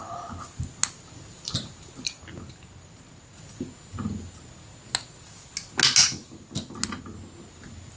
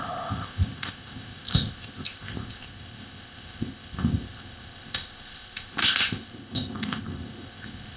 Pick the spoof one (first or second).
second